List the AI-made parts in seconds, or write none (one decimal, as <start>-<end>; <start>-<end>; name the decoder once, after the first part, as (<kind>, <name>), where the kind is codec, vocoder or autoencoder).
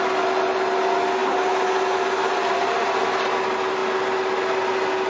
none